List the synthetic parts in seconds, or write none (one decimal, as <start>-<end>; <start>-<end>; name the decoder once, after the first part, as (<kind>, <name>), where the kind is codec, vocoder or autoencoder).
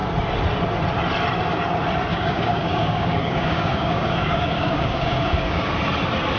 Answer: 2.1-5.7 (codec, DAC)